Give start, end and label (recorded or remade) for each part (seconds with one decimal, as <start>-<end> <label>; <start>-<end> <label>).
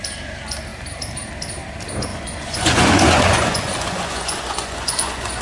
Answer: 0.0-2.1 recorded; 2.1-5.4 remade